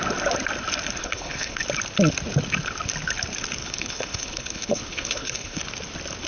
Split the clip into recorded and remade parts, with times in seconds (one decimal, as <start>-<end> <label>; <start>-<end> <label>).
0.0-1.0 recorded; 1.0-1.6 remade; 1.6-3.6 recorded; 3.6-5.6 remade; 5.6-6.3 recorded